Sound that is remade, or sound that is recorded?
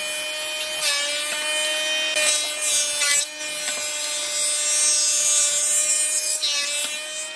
recorded